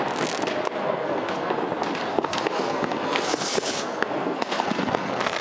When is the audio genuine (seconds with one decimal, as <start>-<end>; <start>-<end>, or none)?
0.0-0.8; 1.6-2.1

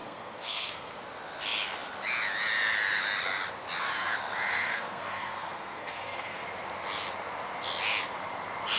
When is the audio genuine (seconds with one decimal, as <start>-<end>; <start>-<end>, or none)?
1.0-4.5; 6.4-8.8

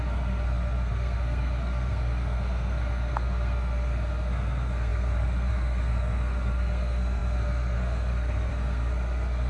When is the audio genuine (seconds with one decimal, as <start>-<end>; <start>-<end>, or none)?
none

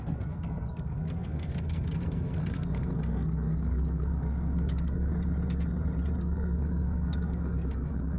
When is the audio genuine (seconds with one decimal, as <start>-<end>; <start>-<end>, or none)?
5.1-6.2

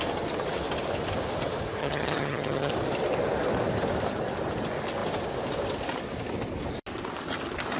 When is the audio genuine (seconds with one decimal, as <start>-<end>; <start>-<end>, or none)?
0.0-1.8; 2.7-7.8

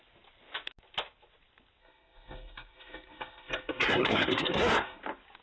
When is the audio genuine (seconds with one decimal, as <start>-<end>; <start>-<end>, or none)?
0.0-1.8; 5.0-5.4

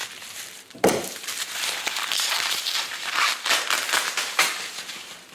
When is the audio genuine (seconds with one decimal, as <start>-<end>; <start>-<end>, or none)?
3.3-4.0